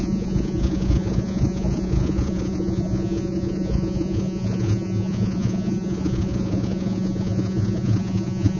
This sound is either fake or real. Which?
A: fake